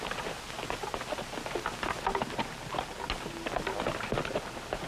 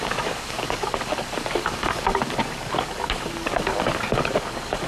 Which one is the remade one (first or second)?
second